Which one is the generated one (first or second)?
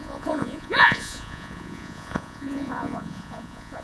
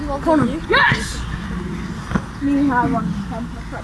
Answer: first